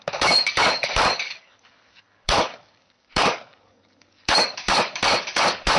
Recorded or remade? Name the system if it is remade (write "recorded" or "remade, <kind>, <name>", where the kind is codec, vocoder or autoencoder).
remade, codec, DAC